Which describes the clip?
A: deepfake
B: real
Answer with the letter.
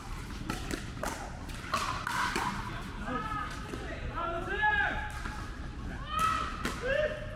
B